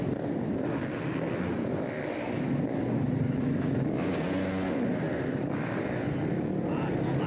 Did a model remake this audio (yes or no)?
no